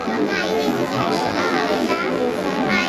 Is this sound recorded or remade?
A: remade